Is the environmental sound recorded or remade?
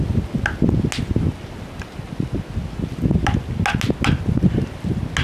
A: recorded